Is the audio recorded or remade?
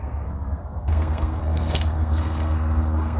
remade